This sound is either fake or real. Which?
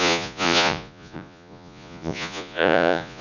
fake